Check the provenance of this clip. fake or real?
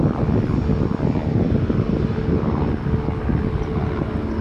real